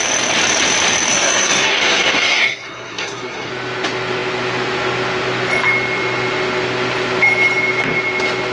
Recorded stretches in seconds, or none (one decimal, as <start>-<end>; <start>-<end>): 0.0-1.1; 3.5-8.5